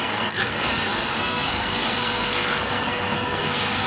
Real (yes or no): no